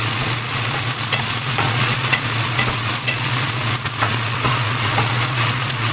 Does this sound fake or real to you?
fake